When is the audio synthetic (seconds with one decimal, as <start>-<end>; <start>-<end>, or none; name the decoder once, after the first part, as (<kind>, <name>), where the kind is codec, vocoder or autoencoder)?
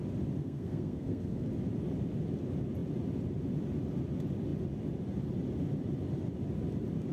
0.4-1.5 (codec, SNAC)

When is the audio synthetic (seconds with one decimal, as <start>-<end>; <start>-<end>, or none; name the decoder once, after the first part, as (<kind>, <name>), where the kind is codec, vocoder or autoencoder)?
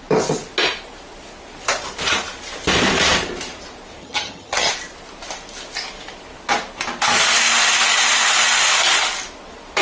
4.0-4.7 (vocoder, HiFi-GAN)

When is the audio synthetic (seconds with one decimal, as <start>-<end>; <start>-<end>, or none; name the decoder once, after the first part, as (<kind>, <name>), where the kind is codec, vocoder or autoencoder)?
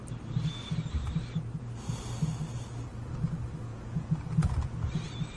3.7-4.9 (vocoder, Vocos)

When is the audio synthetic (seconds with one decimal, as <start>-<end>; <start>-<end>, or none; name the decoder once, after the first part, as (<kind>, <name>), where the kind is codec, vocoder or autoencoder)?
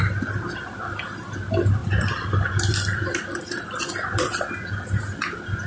1.8-5.2 (vocoder, BigVGAN v2)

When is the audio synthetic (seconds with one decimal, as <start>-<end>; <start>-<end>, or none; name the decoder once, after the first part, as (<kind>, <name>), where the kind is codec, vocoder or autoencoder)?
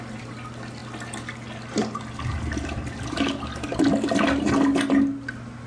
none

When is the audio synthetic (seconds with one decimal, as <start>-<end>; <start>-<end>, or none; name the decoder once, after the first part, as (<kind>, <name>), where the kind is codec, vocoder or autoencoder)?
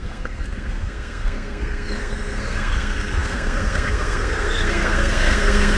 0.0-5.8 (codec, SNAC)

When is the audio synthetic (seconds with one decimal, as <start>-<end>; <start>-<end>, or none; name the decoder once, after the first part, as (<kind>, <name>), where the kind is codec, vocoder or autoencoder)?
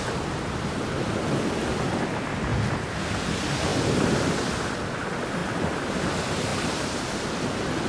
3.7-4.7 (vocoder, BigVGAN v2); 5.4-6.1; 6.5-7.0